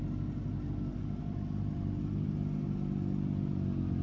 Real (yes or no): yes